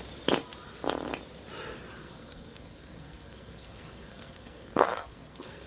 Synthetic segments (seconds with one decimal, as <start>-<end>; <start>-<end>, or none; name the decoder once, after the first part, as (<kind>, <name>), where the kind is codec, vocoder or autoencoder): 2.0-5.7 (codec, SNAC)